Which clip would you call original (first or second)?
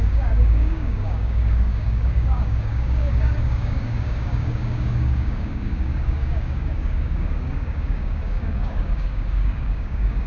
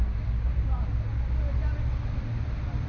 second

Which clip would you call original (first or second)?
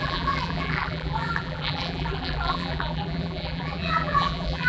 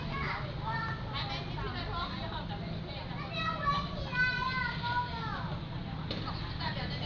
second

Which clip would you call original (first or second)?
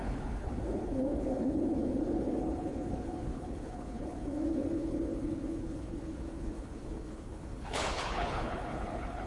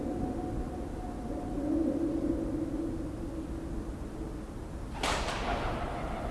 second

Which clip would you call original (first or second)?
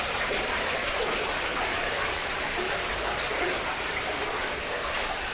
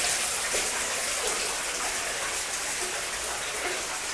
second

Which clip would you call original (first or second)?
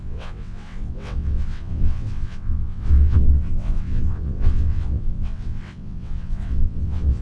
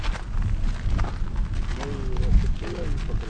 second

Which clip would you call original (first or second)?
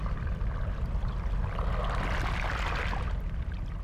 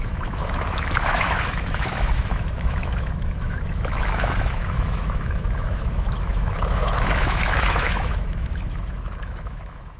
first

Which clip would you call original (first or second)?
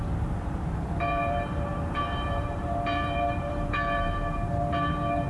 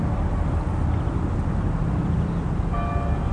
second